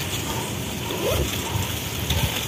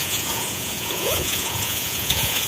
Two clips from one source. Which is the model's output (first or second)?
second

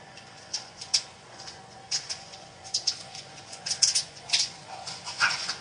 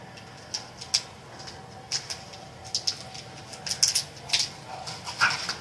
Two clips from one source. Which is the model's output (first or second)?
first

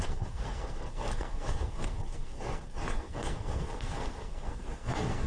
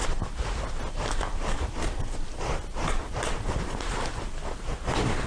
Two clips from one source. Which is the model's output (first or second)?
first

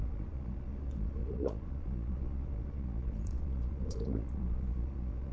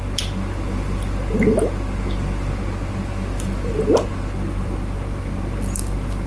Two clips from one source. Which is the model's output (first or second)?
first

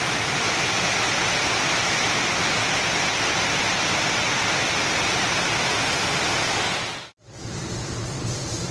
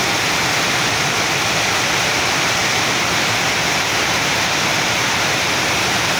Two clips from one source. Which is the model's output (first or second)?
second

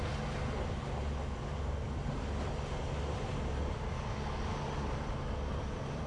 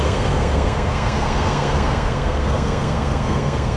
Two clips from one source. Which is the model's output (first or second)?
second